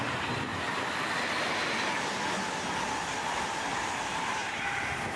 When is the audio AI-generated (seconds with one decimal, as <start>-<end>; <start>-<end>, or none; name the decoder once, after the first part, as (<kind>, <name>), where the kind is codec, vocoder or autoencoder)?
none